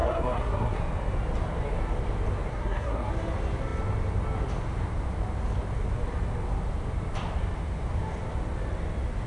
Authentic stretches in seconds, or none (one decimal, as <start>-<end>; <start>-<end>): 0.8-2.5; 3.1-9.3